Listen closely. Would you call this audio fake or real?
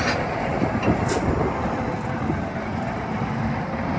real